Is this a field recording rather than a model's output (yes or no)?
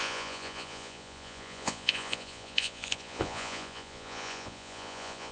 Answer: no